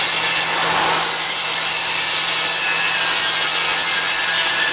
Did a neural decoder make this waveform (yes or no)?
no